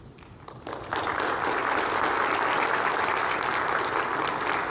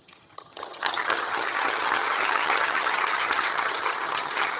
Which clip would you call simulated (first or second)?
second